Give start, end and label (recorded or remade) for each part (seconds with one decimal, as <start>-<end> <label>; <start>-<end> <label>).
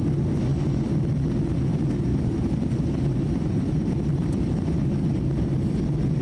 0.0-2.1 recorded; 2.1-5.8 remade; 5.8-6.2 recorded